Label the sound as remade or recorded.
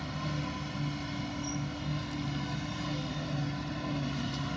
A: recorded